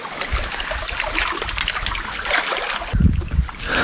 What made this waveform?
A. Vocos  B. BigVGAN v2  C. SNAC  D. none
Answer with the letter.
D